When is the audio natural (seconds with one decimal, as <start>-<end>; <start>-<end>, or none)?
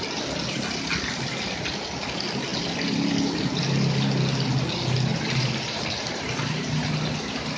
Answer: 0.0-5.1; 6.9-7.6